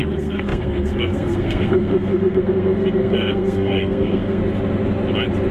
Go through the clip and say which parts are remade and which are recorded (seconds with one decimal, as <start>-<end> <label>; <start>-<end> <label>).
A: 0.0-4.4 remade; 4.4-5.5 recorded

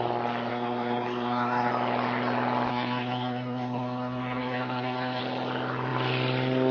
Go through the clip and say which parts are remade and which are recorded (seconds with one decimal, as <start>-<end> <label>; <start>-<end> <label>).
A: 0.0-0.5 recorded; 0.5-1.7 remade; 1.7-2.7 recorded; 2.7-5.2 remade; 5.2-6.7 recorded

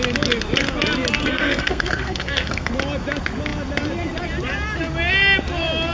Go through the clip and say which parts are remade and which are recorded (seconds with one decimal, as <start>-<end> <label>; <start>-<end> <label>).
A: 0.0-1.2 recorded; 1.2-2.7 remade; 2.7-5.9 recorded